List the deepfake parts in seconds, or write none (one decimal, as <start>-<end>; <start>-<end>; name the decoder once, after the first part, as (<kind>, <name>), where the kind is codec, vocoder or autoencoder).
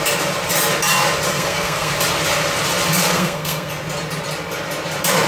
1.3-1.9 (codec, SNAC); 3.1-3.7